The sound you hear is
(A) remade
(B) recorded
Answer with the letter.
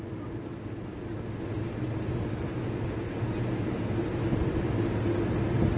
B